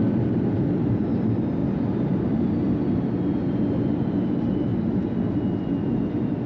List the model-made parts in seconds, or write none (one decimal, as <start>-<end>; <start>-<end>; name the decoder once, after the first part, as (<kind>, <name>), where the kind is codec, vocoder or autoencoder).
0.0-1.6 (vocoder, BigVGAN v2); 3.5-4.7; 5.8-6.5